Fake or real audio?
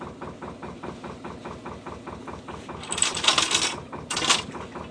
real